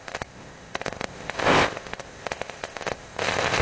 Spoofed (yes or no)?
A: yes